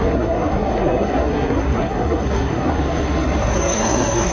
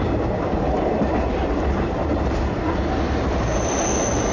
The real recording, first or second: second